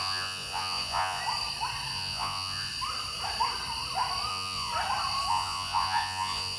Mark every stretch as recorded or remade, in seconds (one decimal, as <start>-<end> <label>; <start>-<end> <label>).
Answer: 0.0-1.2 remade; 1.2-1.9 recorded; 1.9-2.7 remade; 2.7-4.3 recorded; 4.3-4.7 remade; 4.7-5.3 recorded; 5.3-6.6 remade